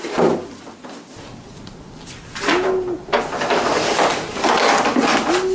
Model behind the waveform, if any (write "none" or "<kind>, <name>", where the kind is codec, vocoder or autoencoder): none